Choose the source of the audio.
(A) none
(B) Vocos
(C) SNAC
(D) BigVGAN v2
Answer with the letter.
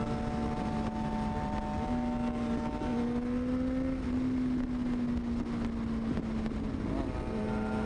A